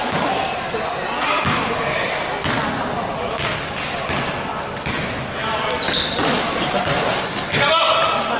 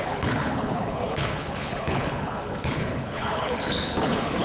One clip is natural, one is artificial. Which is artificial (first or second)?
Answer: second